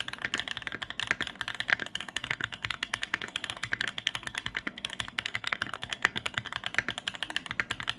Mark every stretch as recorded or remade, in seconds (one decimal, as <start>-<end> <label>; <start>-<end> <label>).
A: 0.0-1.7 recorded; 1.7-6.5 remade; 6.5-8.0 recorded